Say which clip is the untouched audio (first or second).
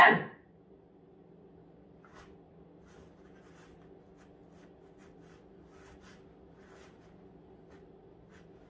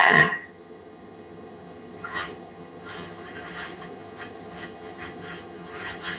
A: first